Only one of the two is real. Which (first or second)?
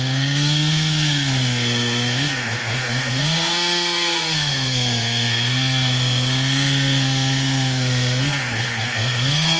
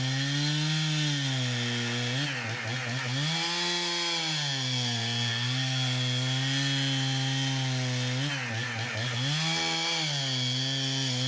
second